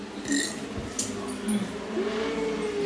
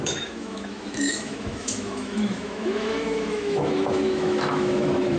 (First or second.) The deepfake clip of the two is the second